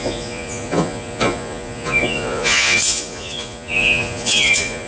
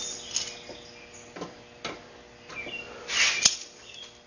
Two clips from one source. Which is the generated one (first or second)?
first